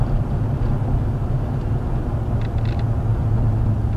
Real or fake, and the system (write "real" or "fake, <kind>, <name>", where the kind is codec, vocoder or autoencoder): real